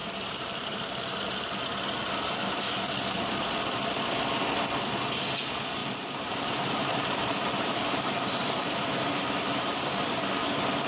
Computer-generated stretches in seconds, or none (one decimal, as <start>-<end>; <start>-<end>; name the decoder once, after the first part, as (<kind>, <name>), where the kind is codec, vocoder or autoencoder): 0.0-1.0 (vocoder, BigVGAN v2); 5.8-9.9